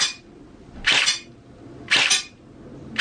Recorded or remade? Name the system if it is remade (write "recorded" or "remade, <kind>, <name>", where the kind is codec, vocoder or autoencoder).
recorded